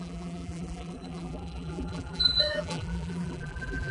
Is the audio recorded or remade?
remade